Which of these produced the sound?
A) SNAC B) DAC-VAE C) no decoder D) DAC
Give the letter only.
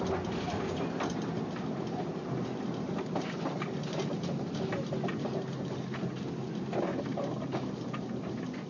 C